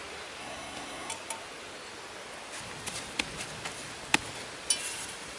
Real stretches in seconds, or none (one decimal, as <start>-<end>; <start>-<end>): 0.0-0.4; 1.1-5.4